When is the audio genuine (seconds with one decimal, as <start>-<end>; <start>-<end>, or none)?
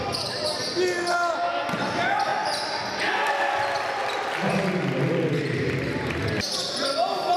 0.0-7.4